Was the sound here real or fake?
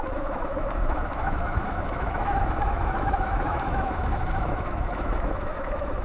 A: fake